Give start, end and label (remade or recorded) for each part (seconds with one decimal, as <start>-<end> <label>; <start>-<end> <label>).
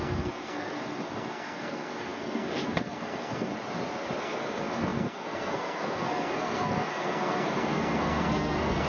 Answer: 0.0-3.5 remade; 3.5-4.2 recorded; 4.2-8.9 remade